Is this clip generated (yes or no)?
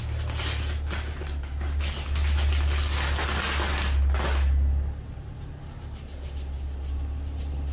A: no